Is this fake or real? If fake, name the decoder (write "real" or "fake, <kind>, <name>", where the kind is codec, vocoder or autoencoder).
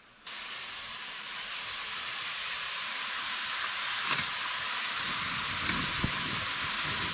real